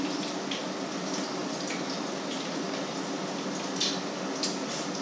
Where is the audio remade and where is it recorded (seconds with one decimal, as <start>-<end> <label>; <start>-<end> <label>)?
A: 0.0-5.0 recorded